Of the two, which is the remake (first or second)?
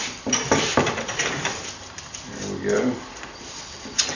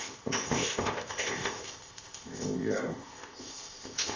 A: second